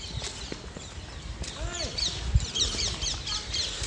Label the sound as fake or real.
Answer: real